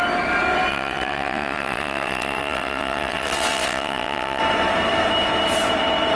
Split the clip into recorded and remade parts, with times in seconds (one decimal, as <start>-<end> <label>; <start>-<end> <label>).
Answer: 0.0-0.7 recorded; 0.7-4.4 remade; 4.4-6.2 recorded

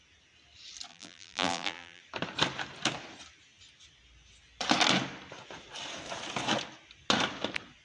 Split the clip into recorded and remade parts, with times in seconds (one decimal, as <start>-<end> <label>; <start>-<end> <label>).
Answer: 0.0-0.9 recorded; 0.9-2.0 remade; 2.0-7.8 recorded

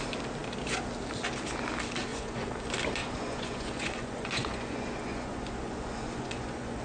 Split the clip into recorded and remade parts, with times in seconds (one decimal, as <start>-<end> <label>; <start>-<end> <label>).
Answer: 0.0-2.1 recorded; 2.1-2.6 remade; 2.6-3.0 recorded; 3.0-6.8 remade

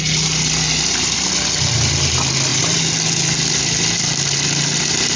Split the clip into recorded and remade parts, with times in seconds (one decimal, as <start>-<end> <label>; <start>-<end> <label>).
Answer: 0.0-5.2 recorded

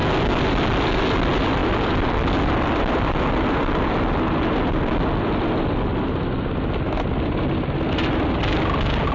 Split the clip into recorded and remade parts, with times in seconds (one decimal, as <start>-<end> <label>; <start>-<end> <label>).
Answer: 0.0-1.6 recorded; 1.6-3.0 remade; 3.0-9.1 recorded

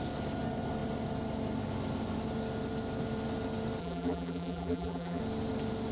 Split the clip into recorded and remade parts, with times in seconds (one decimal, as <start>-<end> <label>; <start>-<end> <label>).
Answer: 0.0-3.8 recorded; 3.8-5.2 remade; 5.2-5.9 recorded

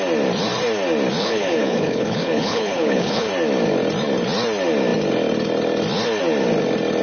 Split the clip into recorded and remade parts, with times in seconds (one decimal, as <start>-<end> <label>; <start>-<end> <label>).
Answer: 0.0-1.2 recorded; 1.2-3.3 remade; 3.3-7.0 recorded